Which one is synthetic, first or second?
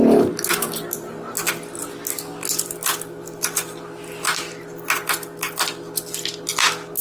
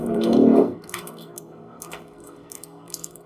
second